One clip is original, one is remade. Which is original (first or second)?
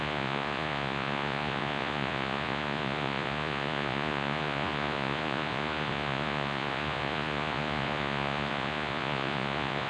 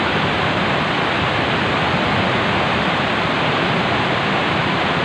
second